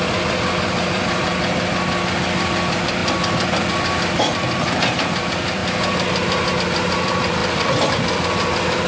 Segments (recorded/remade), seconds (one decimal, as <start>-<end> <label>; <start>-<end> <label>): 0.0-1.3 remade; 1.3-2.1 recorded; 2.1-5.6 remade; 5.6-6.5 recorded; 6.5-8.9 remade